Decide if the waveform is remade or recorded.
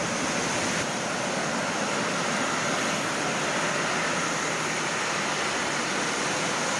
recorded